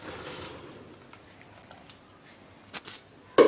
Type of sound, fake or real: real